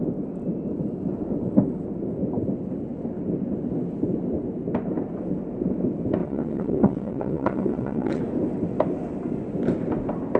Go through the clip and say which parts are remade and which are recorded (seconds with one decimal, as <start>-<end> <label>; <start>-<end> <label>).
0.0-6.2 recorded; 6.2-8.2 remade; 8.2-10.4 recorded